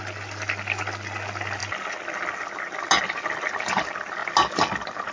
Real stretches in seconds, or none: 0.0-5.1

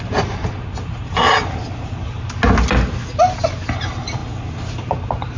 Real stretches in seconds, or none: 0.0-5.4

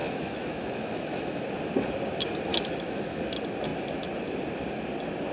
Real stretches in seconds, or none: 1.4-2.5; 3.2-5.3

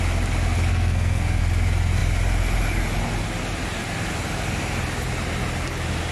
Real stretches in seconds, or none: 0.0-0.7; 1.4-6.1

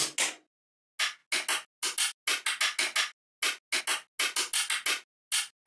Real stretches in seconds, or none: 0.0-5.7